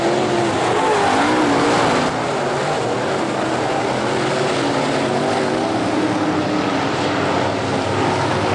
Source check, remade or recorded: recorded